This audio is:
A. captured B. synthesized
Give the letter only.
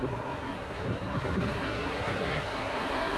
B